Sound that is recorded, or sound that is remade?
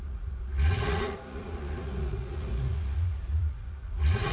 remade